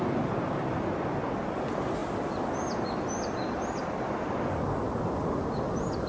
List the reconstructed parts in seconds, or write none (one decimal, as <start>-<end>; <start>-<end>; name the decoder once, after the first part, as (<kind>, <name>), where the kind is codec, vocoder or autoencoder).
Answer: none